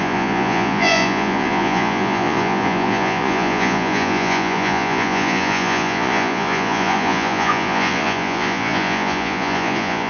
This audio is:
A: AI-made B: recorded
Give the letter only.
A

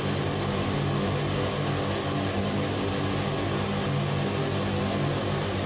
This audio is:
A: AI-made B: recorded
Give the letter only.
B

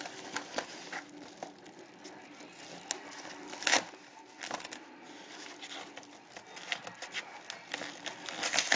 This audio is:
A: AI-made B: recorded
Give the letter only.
B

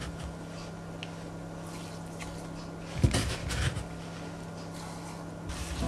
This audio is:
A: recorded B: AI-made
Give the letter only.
A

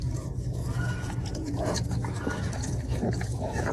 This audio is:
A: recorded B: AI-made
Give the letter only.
B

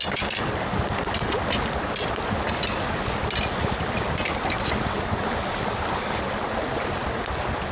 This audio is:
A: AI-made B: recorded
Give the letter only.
B